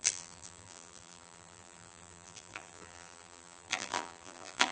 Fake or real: fake